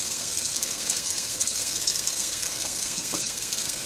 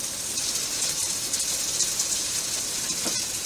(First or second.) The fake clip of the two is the first